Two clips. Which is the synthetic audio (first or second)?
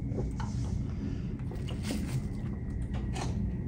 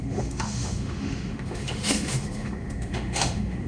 second